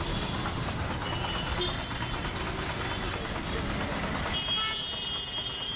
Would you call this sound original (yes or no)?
yes